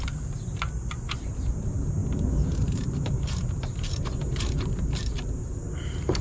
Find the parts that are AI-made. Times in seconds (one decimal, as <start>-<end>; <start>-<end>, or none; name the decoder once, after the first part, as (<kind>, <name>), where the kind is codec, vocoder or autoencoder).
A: 0.0-6.2 (vocoder, BigVGAN v2)